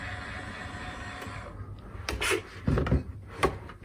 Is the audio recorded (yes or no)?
yes